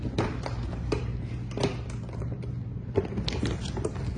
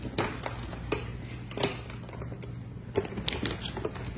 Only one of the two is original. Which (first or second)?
second